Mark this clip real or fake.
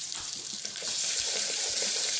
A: fake